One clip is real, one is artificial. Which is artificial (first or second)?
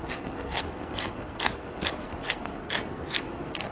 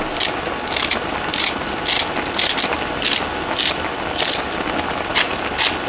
first